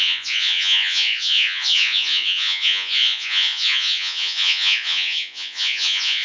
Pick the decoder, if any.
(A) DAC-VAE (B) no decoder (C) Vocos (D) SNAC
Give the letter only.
C